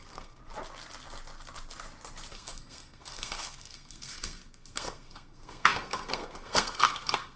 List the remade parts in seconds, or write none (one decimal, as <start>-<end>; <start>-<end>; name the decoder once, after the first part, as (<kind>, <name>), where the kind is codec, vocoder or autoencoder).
0.0-0.4 (codec, SNAC); 2.3-7.4